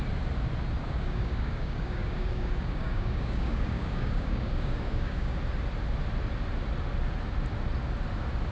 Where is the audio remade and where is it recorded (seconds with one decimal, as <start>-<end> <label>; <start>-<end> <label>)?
0.0-0.8 recorded; 0.8-5.4 remade; 5.4-8.5 recorded